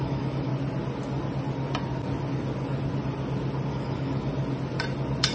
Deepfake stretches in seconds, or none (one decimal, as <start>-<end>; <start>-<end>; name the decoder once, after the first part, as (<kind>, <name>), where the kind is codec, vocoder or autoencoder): 0.0-0.5 (autoencoder, DAC-VAE); 3.7-4.3